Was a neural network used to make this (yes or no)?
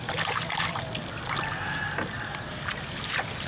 no